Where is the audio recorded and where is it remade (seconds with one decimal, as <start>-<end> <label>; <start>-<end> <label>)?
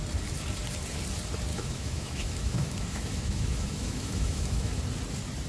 0.0-1.5 recorded; 1.5-4.8 remade; 4.8-5.5 recorded